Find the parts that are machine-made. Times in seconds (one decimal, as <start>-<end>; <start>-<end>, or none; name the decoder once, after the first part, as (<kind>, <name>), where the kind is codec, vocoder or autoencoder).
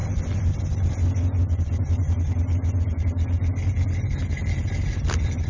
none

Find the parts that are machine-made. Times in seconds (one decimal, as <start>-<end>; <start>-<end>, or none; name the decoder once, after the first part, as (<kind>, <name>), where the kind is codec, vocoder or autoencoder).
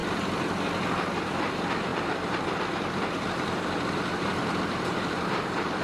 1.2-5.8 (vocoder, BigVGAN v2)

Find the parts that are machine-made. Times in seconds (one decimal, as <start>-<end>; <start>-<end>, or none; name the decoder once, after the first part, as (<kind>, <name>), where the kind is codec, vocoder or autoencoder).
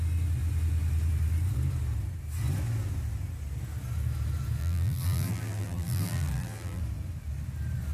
4.6-6.8 (vocoder, BigVGAN v2)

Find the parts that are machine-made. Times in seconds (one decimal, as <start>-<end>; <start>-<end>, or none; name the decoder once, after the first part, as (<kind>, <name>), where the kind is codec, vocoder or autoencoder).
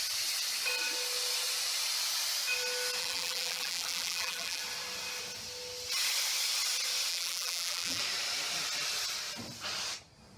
3.0-4.6 (vocoder, BigVGAN v2); 7.1-8.0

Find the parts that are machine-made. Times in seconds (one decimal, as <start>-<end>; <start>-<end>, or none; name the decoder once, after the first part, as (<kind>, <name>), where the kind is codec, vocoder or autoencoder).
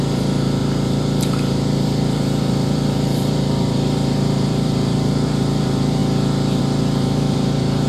0.0-6.0 (vocoder, BigVGAN v2); 6.6-7.9